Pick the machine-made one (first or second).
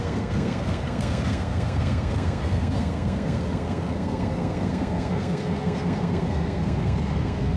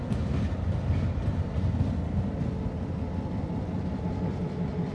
first